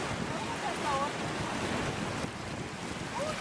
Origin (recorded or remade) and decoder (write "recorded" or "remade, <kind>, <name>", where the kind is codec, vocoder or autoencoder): recorded